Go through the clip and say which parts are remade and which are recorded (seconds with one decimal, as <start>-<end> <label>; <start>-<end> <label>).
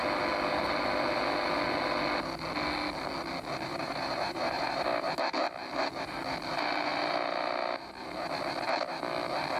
0.0-3.7 recorded; 3.7-5.2 remade; 5.2-9.6 recorded